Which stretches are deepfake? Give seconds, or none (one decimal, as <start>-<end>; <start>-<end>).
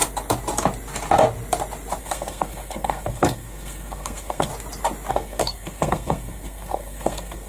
2.0-4.5; 5.1-7.5